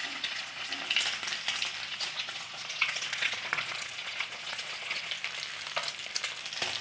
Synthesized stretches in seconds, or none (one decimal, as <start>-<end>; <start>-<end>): 0.0-0.7; 1.9-5.1